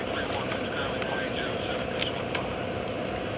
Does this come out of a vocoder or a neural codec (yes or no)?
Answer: no